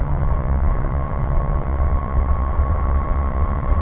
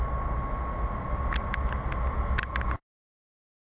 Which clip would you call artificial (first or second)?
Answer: first